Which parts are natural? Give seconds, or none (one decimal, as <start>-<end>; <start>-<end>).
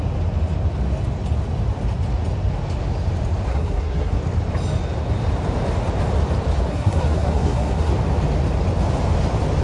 0.0-3.5; 4.2-6.7; 7.9-9.6